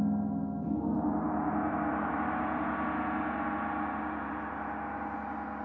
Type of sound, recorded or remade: recorded